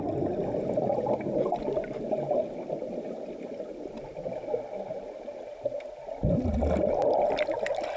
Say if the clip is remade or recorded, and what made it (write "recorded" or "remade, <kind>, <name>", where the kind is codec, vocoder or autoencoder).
recorded